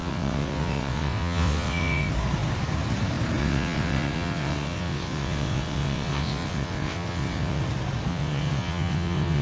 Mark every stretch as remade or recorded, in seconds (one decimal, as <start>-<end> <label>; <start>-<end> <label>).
0.0-2.1 remade; 2.1-3.4 recorded; 3.4-7.6 remade; 7.6-8.1 recorded; 8.1-9.4 remade

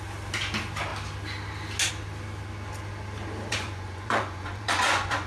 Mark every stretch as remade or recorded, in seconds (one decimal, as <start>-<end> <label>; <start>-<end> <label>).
0.0-3.5 recorded; 3.5-5.3 remade